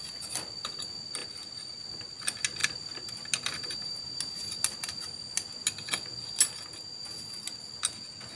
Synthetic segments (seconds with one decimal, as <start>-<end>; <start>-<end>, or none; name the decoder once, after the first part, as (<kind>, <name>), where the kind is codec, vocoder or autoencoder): none